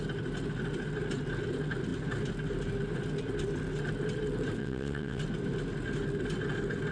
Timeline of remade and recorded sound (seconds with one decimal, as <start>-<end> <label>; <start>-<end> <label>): 0.0-4.6 recorded; 4.6-5.2 remade; 5.2-6.9 recorded